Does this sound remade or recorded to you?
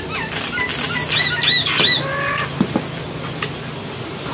recorded